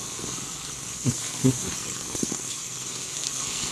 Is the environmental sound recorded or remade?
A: remade